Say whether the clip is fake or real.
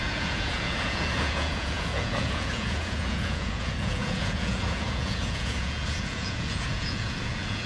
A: fake